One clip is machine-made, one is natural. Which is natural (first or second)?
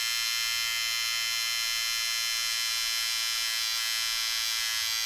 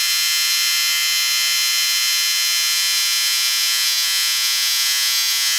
first